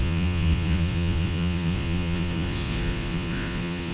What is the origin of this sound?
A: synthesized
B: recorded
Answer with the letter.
A